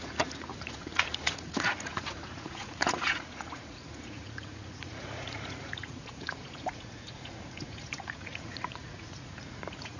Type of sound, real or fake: fake